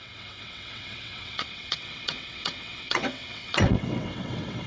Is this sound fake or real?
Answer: fake